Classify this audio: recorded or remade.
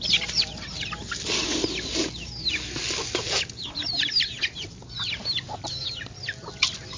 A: recorded